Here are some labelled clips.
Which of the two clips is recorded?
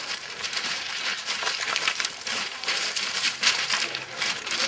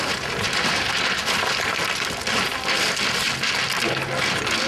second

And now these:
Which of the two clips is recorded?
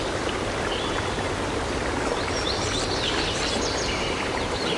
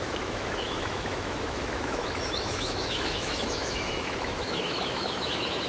first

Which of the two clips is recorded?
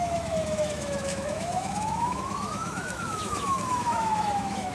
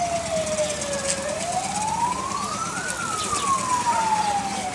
second